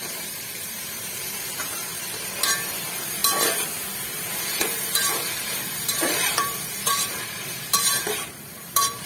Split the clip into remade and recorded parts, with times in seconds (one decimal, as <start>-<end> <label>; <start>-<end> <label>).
0.0-3.2 remade; 3.2-4.4 recorded; 4.4-9.1 remade